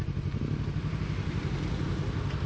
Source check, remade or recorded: recorded